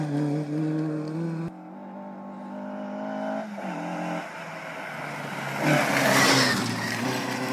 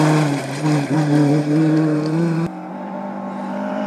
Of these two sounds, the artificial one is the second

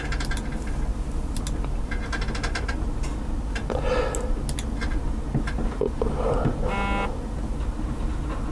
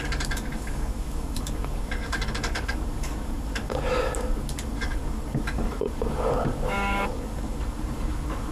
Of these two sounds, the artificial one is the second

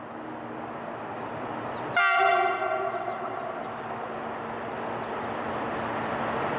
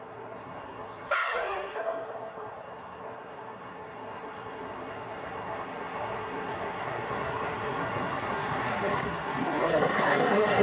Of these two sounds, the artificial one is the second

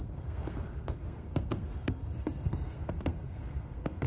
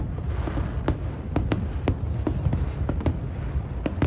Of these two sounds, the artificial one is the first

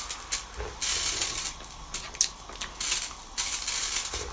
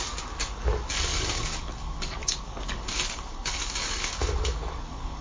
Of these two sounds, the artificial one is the second